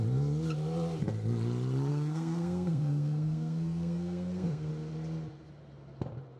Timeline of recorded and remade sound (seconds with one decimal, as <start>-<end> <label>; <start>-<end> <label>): 0.0-1.9 recorded; 1.9-4.7 remade; 4.7-6.4 recorded